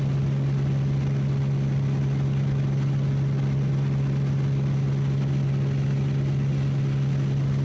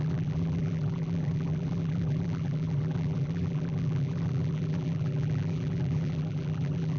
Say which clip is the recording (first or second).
first